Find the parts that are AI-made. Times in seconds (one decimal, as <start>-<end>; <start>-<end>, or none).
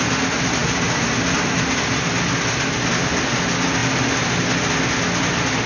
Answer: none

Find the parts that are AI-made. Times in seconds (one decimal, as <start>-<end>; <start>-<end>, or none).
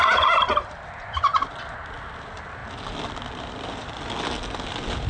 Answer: none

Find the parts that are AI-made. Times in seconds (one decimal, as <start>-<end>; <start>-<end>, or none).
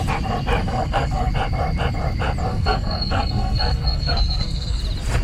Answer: 0.6-1.3; 2.5-4.8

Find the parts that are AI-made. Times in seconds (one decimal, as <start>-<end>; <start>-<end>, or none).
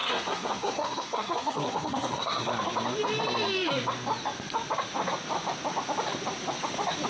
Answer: 0.0-2.5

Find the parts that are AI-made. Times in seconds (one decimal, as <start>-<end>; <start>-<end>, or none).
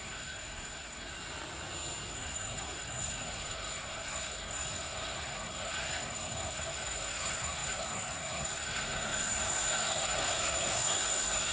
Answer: 0.0-1.1; 2.1-11.5